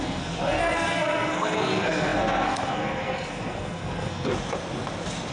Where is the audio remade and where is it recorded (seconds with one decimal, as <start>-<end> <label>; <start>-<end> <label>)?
0.0-4.3 remade; 4.3-5.3 recorded